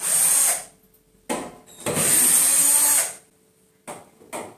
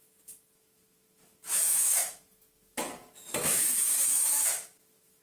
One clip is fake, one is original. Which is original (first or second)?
first